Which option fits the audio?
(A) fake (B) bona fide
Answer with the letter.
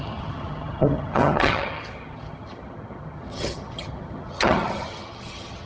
A